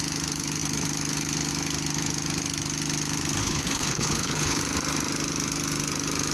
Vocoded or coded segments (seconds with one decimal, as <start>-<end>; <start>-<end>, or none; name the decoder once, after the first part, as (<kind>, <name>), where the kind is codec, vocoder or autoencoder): 3.4-4.6 (codec, HILCodec)